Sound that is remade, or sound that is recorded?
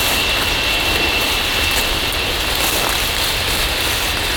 recorded